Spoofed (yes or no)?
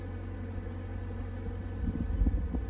no